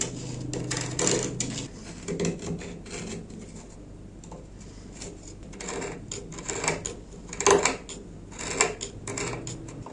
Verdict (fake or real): real